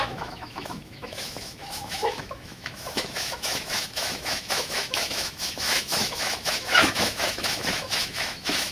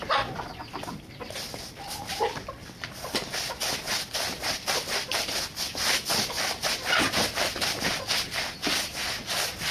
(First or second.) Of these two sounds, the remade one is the first